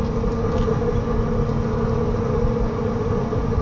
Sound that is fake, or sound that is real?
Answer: real